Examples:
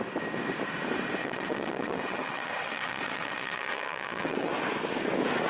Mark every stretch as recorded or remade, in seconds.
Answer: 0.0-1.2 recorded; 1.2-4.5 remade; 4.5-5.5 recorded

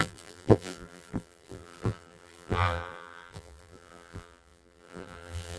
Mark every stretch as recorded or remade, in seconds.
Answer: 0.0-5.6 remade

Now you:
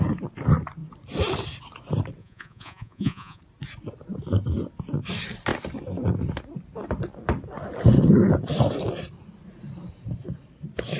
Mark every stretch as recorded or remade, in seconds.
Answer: 0.0-2.2 recorded; 2.2-3.4 remade; 3.4-11.0 recorded